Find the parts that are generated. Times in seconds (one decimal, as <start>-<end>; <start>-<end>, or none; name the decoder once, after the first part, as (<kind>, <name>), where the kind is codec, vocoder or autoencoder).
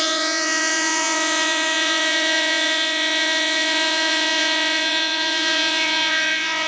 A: 0.0-6.7 (vocoder, Vocos)